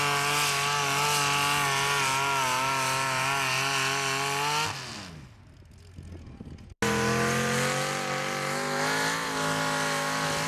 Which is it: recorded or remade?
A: recorded